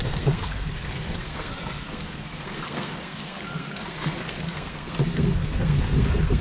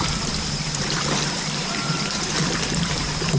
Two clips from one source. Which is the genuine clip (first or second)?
second